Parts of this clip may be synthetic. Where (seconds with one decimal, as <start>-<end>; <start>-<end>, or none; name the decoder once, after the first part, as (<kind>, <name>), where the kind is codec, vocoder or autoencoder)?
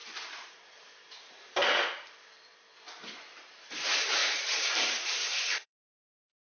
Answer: 4.2-6.4 (vocoder, BigVGAN v2)